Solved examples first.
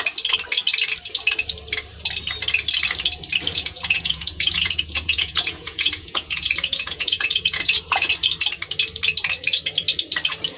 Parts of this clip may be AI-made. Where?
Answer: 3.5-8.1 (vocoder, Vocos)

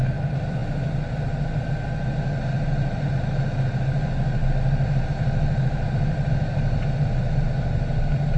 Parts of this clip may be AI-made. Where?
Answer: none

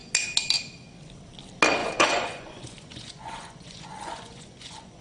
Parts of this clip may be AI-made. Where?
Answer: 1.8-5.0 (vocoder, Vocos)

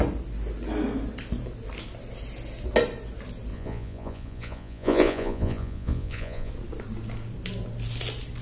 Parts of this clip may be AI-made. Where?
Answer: 3.5-6.5 (vocoder, Vocos)

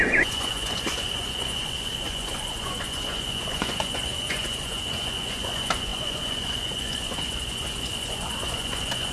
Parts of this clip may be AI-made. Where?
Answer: 0.0-9.1 (vocoder, Vocos)

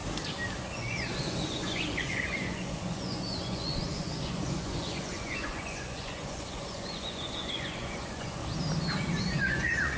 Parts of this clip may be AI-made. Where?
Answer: 0.6-8.4 (vocoder, Vocos); 9.2-10.0